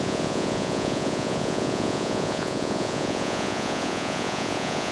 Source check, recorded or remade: remade